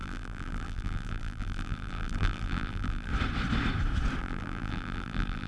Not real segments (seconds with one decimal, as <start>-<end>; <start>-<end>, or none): 0.0-3.1; 4.2-5.5